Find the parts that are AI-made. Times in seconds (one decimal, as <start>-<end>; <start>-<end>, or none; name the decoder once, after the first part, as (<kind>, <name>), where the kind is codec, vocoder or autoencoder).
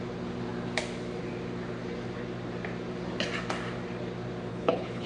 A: 4.5-5.1 (codec, HILCodec)